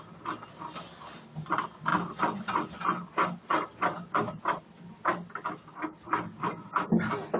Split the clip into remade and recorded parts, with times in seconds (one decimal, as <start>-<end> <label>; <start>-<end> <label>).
0.0-7.4 recorded